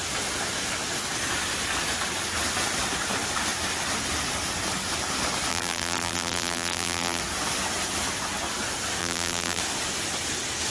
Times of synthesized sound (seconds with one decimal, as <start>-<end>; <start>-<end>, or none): 5.5-7.2; 9.0-9.6